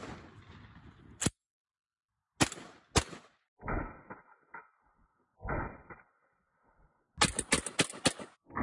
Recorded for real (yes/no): yes